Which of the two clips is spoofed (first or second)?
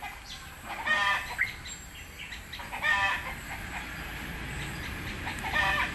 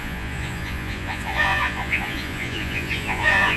second